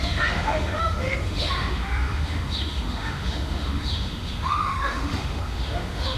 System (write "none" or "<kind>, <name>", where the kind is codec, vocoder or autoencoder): autoencoder, DAC-VAE